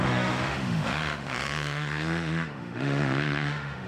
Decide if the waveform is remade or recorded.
remade